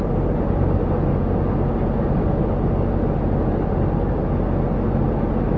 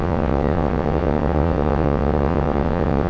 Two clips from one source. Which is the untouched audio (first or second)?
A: first